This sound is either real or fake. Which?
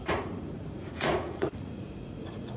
fake